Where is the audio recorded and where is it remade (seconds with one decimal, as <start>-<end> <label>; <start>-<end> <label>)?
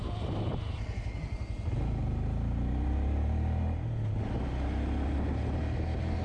0.0-6.2 recorded